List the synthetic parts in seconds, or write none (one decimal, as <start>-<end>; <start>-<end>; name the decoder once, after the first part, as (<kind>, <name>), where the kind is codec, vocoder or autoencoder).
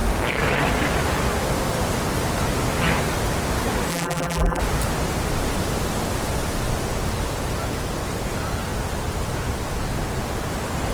3.9-4.6 (vocoder, BigVGAN v2)